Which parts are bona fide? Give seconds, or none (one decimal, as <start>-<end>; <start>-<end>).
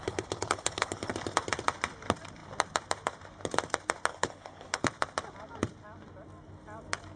1.1-4.1; 4.8-7.2